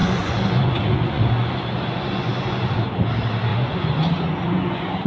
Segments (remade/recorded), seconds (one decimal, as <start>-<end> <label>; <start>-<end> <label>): 0.0-3.1 remade; 3.1-3.5 recorded; 3.5-5.1 remade